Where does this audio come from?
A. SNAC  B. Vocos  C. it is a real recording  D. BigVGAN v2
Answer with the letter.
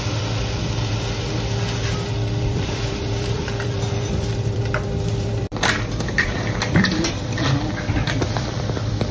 D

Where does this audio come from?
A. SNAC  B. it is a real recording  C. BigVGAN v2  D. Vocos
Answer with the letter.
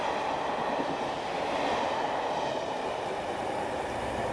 B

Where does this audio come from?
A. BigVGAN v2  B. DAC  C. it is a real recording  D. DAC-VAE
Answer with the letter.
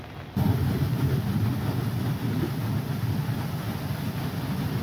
C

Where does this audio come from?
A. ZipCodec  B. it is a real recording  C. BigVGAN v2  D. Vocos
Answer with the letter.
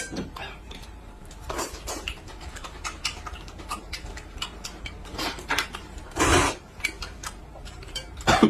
C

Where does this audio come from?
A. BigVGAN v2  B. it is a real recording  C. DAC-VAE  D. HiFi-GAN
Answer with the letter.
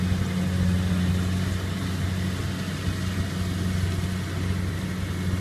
B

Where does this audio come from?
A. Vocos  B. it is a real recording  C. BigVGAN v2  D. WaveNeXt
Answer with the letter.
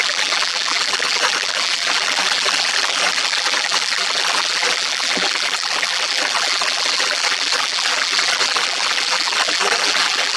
C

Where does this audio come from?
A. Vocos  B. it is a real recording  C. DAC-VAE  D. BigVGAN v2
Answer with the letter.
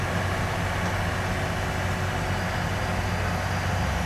B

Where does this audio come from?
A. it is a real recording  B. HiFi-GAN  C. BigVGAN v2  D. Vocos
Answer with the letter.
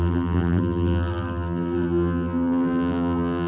C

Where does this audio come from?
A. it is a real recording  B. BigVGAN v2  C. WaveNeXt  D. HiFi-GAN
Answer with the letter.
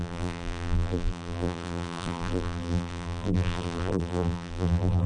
B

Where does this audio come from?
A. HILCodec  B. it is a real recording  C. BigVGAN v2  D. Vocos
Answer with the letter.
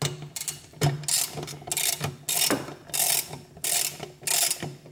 B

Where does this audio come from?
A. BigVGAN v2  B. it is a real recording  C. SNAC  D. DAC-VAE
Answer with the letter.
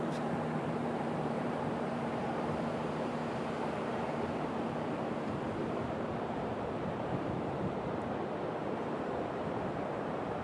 A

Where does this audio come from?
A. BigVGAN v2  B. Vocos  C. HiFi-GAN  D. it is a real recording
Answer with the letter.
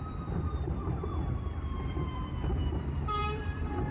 A